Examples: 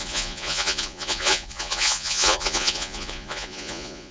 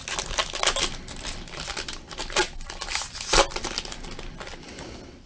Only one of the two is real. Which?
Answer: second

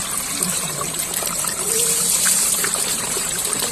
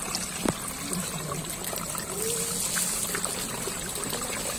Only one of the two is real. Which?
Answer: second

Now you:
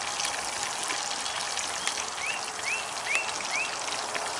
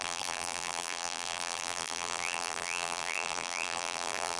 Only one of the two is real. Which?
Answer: first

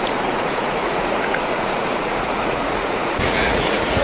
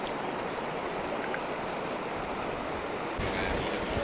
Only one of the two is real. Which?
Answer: second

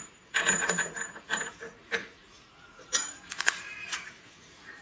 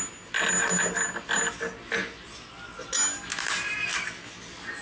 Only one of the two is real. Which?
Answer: second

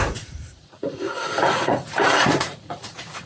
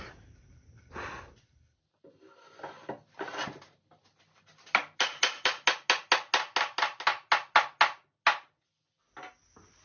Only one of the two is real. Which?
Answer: second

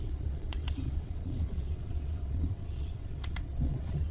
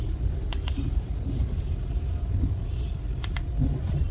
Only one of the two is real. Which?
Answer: second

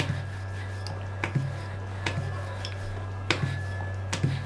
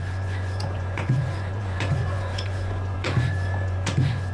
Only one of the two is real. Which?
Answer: first